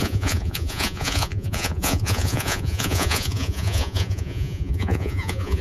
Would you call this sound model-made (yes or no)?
yes